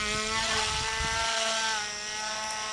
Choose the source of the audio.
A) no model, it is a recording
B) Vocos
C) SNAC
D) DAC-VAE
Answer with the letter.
A